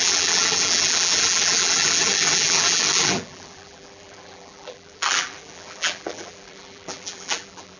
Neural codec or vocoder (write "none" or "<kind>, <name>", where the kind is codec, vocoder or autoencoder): vocoder, BigVGAN v2